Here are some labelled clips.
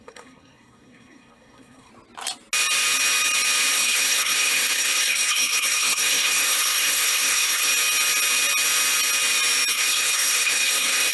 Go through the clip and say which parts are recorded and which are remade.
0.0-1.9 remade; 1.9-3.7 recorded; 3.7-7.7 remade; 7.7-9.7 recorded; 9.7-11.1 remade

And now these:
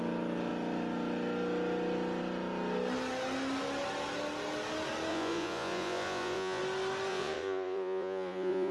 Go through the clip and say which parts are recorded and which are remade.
0.0-5.1 recorded; 5.1-6.6 remade; 6.6-7.1 recorded; 7.1-8.7 remade